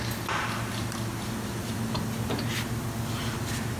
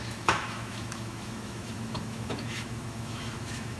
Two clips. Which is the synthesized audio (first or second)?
second